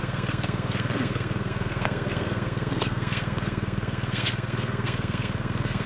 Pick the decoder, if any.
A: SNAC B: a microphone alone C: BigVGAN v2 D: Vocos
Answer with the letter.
A